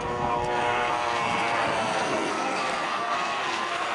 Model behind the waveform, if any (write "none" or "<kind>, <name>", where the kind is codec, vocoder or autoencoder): codec, SNAC